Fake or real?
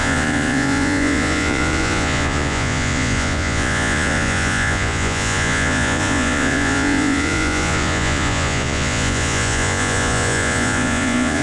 fake